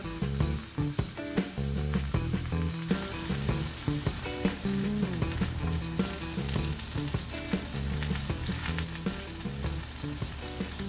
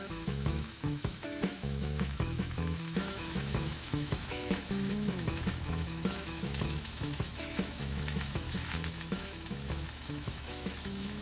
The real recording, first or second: first